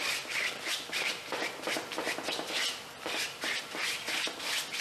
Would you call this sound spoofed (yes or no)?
no